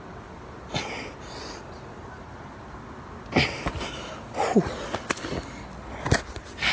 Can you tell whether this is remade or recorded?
recorded